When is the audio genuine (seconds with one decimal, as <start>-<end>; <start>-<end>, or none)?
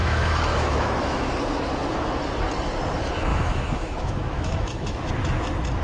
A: 1.3-3.3; 5.1-5.8